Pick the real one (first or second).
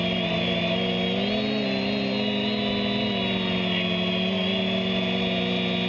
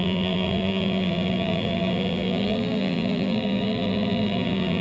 first